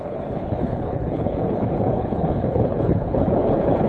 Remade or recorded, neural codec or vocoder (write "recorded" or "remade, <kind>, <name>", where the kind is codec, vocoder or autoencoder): remade, codec, HILCodec